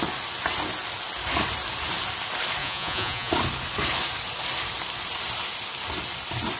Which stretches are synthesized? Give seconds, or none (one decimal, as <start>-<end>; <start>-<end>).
2.6-3.3